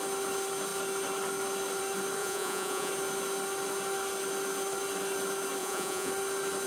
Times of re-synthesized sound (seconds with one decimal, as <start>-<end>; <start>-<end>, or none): 2.2-2.9; 5.6-6.1